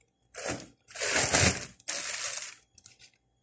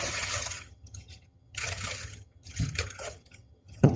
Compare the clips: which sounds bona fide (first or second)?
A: first